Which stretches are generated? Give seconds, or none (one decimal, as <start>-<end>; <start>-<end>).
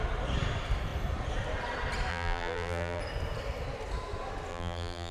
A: 2.1-3.0; 4.5-5.1